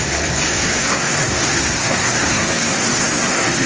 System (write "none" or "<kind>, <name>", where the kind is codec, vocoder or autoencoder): codec, SNAC